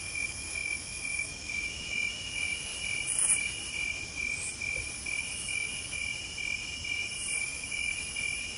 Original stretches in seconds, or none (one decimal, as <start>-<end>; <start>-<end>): 2.7-5.2; 6.0-7.4; 7.9-8.6